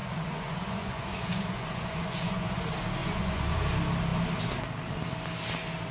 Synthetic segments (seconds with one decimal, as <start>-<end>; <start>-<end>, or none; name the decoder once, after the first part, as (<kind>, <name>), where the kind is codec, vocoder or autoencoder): 0.0-2.6 (vocoder, Vocos); 3.0-3.6